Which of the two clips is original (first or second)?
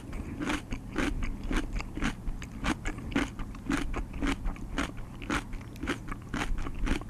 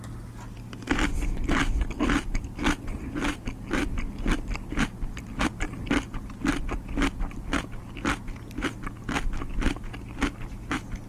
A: second